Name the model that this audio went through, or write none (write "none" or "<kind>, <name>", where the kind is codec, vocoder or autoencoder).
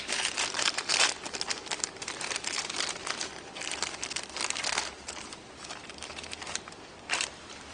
vocoder, BigVGAN v2